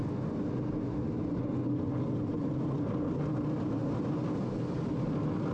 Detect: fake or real real